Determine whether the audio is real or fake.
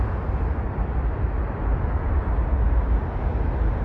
real